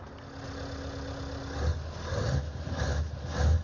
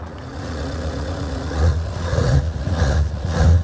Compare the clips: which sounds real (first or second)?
first